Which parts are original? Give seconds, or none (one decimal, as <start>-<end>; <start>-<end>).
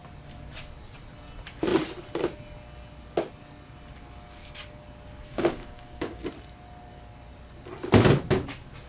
0.0-5.3; 6.3-8.9